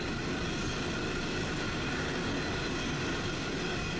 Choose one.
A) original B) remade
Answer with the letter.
A